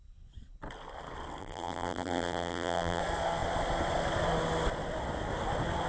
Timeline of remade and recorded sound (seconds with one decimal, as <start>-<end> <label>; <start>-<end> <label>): 0.0-1.4 recorded; 1.4-3.0 remade; 3.0-5.9 recorded